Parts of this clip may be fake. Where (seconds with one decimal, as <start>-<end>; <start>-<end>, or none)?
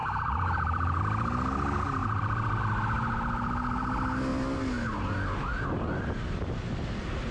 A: 0.0-1.0